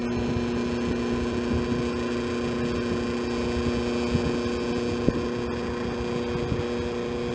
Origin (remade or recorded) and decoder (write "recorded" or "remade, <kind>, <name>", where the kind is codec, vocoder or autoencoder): recorded